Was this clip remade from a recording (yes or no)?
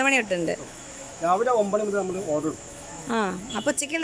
yes